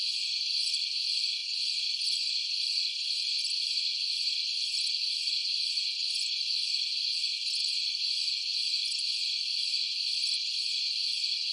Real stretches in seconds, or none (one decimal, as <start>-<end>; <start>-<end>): 0.0-11.5